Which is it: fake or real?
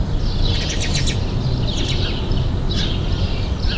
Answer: real